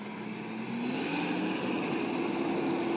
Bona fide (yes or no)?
yes